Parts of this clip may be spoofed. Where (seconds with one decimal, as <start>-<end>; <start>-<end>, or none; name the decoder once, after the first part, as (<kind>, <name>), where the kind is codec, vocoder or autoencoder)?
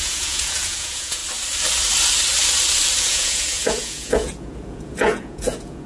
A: 0.0-1.2 (vocoder, Vocos); 3.0-5.9